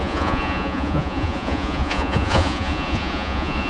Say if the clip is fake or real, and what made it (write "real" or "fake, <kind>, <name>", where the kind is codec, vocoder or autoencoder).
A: fake, vocoder, Vocos